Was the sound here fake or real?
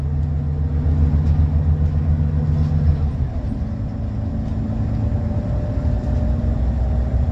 real